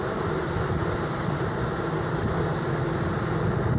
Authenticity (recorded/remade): recorded